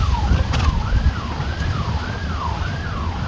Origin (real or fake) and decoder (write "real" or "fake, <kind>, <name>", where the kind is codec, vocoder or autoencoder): real